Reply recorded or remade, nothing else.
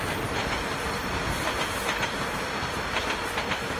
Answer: recorded